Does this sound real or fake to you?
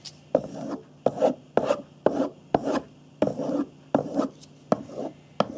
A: real